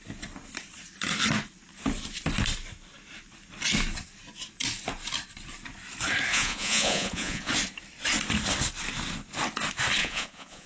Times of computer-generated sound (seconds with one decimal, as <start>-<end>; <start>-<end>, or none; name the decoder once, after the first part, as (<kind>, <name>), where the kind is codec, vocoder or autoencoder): 6.3-7.5 (vocoder, Vocos); 10.0-10.7